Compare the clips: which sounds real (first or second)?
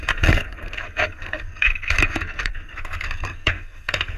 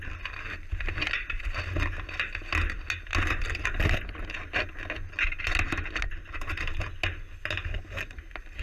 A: second